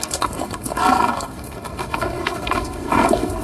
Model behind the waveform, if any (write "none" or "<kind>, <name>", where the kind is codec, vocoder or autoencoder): codec, SNAC